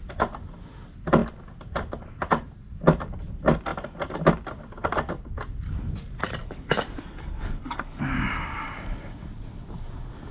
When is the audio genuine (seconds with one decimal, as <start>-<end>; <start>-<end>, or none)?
0.0-6.4; 8.0-10.3